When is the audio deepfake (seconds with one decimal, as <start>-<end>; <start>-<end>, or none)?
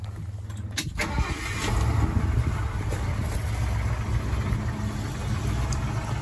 2.4-3.2